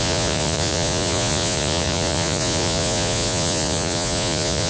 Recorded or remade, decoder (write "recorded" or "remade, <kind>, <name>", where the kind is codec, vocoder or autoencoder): remade, vocoder, Vocos